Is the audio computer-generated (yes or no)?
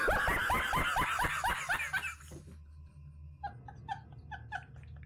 no